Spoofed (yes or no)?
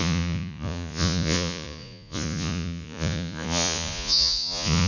yes